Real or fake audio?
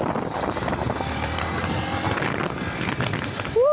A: real